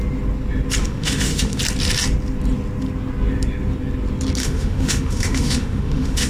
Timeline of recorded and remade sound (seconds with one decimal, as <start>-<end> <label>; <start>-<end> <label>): 0.0-0.8 recorded; 0.8-1.6 remade; 1.6-4.4 recorded; 4.4-6.3 remade